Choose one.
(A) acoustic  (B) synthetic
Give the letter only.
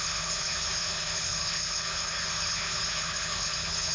B